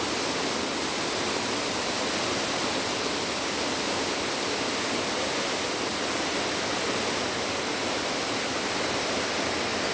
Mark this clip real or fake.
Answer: real